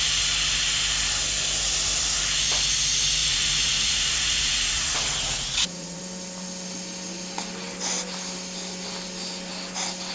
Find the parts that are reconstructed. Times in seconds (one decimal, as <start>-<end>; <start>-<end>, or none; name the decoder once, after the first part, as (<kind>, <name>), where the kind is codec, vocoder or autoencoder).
3.2-6.0 (vocoder, Vocos)